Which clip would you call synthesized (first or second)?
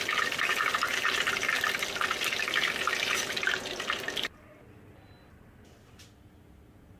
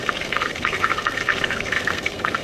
second